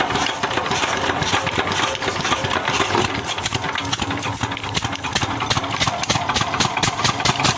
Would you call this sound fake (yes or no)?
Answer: yes